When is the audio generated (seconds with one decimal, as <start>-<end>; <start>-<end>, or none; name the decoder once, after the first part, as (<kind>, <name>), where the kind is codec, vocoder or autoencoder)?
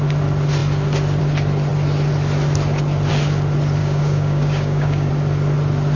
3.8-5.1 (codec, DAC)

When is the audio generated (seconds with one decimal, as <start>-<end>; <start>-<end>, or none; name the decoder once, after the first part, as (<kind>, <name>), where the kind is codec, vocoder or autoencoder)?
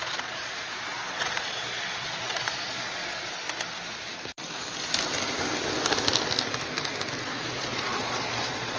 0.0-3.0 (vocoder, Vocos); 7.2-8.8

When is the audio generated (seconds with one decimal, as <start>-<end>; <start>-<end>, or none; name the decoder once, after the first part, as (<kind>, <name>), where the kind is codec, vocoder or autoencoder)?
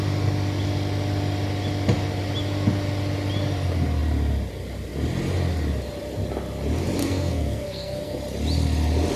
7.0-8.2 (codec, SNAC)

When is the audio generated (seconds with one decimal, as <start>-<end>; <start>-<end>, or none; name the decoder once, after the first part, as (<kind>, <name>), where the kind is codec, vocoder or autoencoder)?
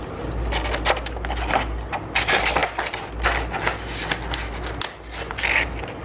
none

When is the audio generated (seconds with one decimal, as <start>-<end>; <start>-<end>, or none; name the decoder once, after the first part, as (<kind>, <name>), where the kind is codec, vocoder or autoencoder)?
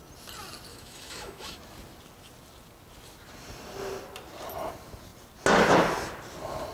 0.7-1.6 (autoencoder, DAC-VAE)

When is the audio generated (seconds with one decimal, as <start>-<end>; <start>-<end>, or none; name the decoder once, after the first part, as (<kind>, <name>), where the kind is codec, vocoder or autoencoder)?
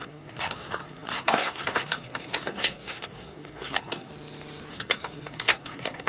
0.0-4.1 (codec, SNAC); 4.7-6.1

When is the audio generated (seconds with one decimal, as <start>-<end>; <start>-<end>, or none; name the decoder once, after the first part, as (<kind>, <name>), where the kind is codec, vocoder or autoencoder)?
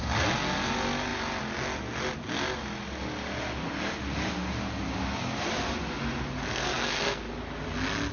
6.4-7.3 (codec, SNAC)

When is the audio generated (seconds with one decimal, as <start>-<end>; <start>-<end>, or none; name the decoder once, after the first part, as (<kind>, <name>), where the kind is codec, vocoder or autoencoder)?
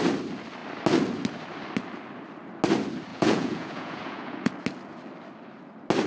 3.1-4.5 (vocoder, Vocos)